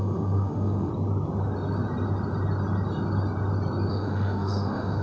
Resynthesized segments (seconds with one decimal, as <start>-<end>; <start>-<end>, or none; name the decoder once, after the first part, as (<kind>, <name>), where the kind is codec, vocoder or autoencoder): 0.0-0.9 (autoencoder, DAC-VAE); 3.9-5.0

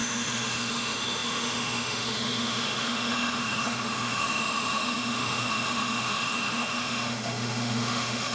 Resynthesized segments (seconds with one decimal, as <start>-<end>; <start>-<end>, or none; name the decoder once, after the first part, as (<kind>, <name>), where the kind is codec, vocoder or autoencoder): 0.0-8.3 (autoencoder, DAC-VAE)

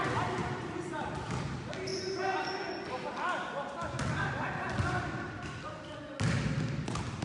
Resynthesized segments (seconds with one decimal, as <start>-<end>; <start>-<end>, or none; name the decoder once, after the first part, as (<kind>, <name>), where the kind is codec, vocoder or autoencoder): none

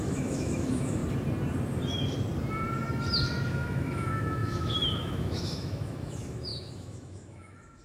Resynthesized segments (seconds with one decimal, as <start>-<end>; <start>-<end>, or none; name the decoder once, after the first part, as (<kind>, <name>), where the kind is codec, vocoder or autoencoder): 0.0-1.0 (autoencoder, DAC-VAE); 3.5-7.8

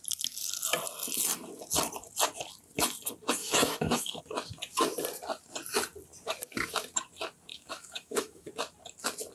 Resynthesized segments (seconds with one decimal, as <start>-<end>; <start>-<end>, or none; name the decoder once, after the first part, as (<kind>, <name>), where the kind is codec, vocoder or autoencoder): 3.4-4.2 (autoencoder, DAC-VAE); 7.5-8.5

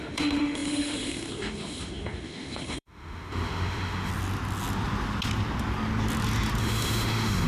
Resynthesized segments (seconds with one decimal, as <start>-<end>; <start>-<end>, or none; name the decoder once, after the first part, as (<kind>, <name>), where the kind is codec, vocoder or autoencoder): 0.0-4.1 (autoencoder, DAC-VAE); 6.6-7.5

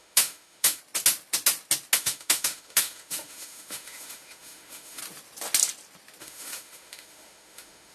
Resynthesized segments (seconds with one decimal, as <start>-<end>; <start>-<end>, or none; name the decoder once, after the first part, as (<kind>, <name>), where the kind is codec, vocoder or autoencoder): 0.0-0.8 (autoencoder, DAC-VAE); 2.0-5.0; 6.2-7.9